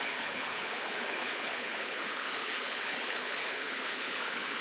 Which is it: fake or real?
fake